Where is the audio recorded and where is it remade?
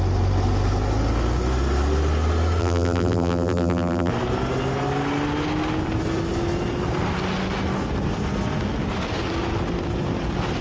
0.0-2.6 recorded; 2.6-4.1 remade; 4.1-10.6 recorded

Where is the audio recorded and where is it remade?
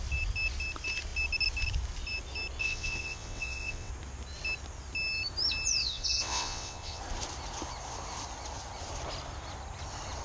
0.0-2.6 recorded; 2.6-3.9 remade; 3.9-5.8 recorded; 5.8-7.0 remade; 7.0-10.2 recorded